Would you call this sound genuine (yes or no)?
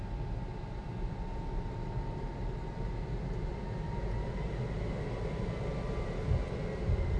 yes